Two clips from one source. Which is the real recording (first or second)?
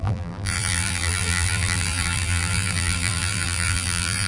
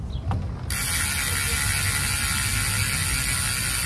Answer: second